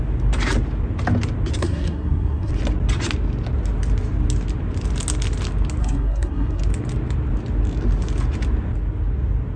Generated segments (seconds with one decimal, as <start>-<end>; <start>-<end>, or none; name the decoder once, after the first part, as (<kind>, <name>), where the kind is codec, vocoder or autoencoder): 1.6-2.5 (codec, SNAC); 5.8-6.6